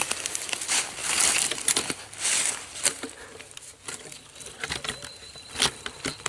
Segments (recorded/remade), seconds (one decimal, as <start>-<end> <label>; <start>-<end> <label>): 0.0-1.0 recorded; 1.0-2.0 remade; 2.0-6.3 recorded